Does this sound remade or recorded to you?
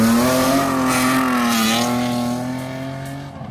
recorded